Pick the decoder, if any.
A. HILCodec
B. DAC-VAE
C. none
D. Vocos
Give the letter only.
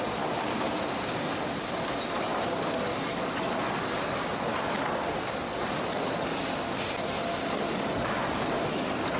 C